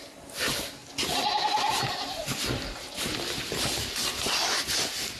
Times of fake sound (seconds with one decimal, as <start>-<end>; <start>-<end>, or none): none